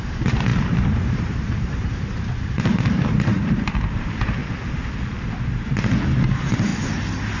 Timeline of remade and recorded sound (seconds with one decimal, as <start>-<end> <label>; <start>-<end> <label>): 0.0-4.4 remade; 4.4-6.2 recorded; 6.2-6.7 remade; 6.7-7.4 recorded